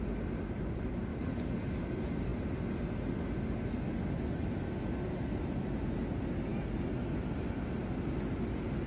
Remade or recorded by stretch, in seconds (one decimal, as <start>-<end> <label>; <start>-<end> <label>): 0.0-8.9 recorded